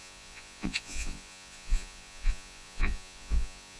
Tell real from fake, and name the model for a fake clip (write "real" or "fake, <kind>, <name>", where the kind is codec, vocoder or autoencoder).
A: fake, vocoder, Vocos